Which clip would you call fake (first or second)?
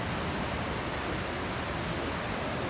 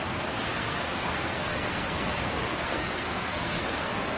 second